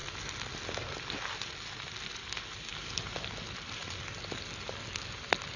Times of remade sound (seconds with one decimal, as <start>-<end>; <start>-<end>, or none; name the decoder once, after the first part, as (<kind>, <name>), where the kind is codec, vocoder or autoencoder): none